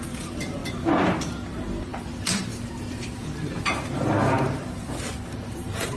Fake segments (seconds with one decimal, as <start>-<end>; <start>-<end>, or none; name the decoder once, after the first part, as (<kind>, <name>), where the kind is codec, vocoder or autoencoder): 0.0-0.6 (vocoder, BigVGAN v2); 1.5-6.0